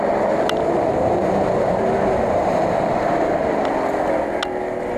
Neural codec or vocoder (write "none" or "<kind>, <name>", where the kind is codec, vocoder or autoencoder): none